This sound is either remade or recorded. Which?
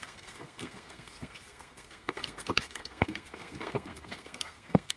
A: remade